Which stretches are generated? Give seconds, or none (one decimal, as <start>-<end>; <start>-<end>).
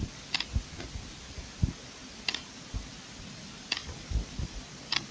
none